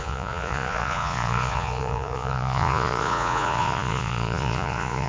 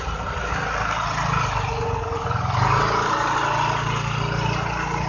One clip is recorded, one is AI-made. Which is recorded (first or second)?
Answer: second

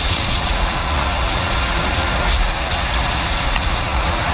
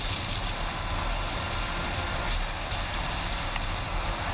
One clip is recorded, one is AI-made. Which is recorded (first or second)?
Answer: second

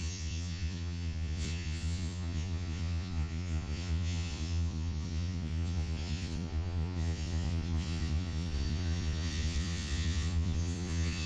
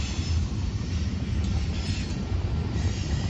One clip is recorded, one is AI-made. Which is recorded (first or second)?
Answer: second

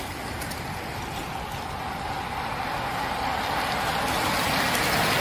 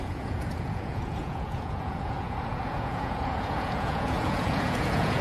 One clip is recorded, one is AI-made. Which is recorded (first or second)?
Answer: first